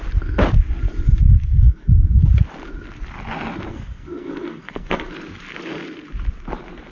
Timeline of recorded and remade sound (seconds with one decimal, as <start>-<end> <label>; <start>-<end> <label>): 0.0-1.4 recorded; 1.4-2.3 remade; 2.3-3.7 recorded; 3.7-5.1 remade; 5.1-6.9 recorded